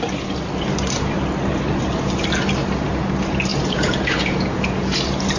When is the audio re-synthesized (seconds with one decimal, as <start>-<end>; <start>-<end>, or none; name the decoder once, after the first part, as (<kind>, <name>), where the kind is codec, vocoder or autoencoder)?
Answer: 3.5-5.0 (vocoder, Vocos)